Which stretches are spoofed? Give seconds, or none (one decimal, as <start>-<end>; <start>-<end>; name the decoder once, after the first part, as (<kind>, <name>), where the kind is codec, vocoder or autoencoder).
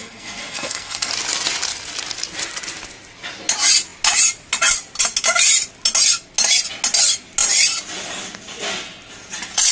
0.0-1.1 (codec, SNAC)